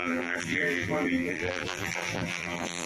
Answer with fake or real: fake